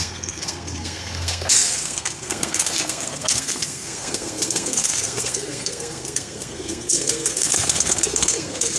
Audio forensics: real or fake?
fake